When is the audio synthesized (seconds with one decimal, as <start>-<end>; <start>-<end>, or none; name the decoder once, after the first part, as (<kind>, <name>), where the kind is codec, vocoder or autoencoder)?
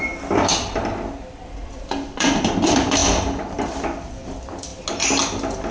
0.0-4.7 (vocoder, BigVGAN v2)